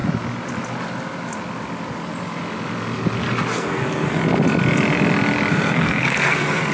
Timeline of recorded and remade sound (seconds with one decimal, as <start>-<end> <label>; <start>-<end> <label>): 0.0-3.5 recorded; 3.5-4.2 remade; 4.2-5.5 recorded; 5.5-6.7 remade